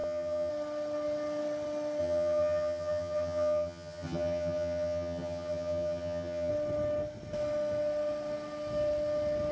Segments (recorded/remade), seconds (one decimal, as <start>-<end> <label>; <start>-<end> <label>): 0.0-0.5 remade; 0.5-2.0 recorded; 2.0-6.5 remade; 6.5-9.5 recorded